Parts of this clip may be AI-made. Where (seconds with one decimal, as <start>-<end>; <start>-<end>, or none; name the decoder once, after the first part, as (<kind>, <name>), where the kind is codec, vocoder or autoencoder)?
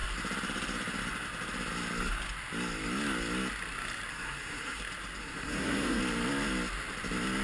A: 4.1-4.8 (codec, SNAC); 5.2-6.0